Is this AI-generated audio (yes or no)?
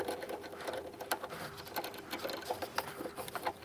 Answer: no